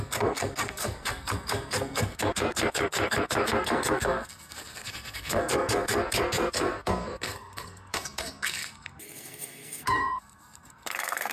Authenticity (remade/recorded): remade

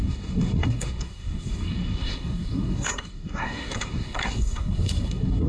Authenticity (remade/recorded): remade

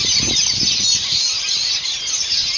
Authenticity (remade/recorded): recorded